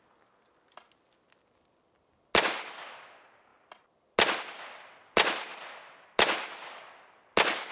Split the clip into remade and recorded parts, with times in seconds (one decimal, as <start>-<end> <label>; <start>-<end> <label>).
0.0-7.7 recorded